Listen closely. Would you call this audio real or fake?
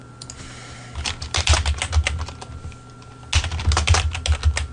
real